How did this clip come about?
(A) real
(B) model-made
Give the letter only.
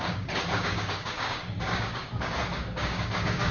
B